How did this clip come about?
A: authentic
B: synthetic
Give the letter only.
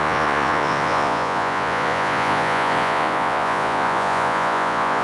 B